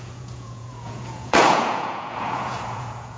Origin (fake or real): fake